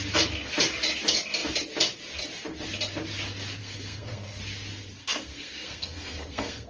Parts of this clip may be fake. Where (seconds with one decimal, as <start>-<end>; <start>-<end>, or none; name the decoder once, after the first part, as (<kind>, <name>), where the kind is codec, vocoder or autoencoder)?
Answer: 3.6-4.4 (codec, SNAC); 5.0-6.7